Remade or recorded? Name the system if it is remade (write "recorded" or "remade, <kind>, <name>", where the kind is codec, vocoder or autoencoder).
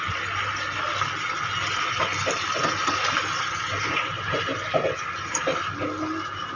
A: recorded